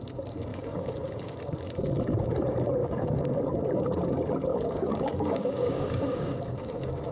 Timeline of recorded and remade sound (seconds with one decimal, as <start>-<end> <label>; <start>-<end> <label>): 0.0-0.5 recorded; 0.5-1.5 remade; 1.5-2.8 recorded; 2.8-3.4 remade; 3.4-4.5 recorded; 4.5-7.1 remade